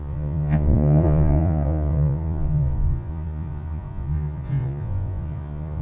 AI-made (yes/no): yes